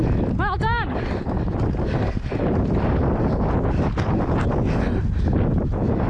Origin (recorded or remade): recorded